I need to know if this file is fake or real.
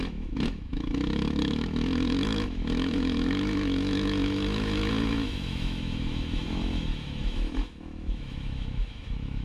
fake